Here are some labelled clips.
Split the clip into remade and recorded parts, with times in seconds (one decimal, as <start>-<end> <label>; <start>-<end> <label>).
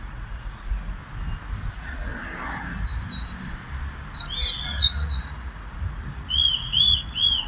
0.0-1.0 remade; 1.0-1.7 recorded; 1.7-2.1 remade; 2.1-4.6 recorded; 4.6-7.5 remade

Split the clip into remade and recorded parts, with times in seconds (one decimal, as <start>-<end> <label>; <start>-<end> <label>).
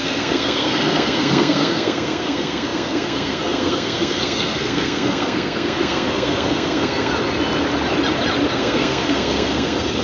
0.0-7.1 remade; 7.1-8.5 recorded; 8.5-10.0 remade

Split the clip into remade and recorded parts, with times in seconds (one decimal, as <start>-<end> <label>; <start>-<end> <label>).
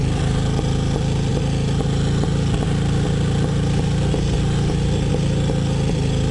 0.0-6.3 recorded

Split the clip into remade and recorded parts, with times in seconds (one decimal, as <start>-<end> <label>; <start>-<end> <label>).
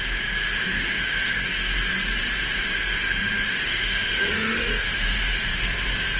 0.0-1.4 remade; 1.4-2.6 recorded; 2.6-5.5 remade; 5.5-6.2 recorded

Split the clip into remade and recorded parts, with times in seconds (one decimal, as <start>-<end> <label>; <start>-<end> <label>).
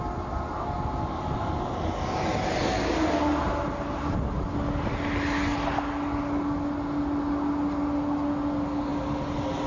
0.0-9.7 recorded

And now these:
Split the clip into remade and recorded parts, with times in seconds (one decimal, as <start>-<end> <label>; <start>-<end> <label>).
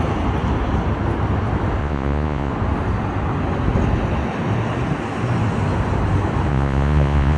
0.0-1.8 recorded; 1.8-2.5 remade; 2.5-6.5 recorded; 6.5-7.4 remade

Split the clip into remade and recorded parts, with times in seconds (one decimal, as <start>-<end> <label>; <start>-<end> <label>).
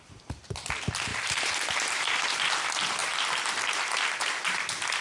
0.0-1.1 recorded; 1.1-2.4 remade; 2.4-3.0 recorded; 3.0-5.0 remade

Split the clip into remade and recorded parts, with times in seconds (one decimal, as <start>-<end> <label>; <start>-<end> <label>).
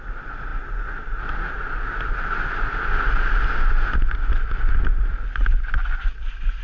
0.0-6.6 recorded